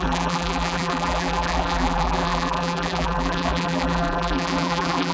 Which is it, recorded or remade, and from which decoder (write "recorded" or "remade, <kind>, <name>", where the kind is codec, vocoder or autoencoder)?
remade, vocoder, BigVGAN v2